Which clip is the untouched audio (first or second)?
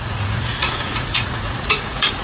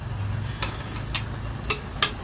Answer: second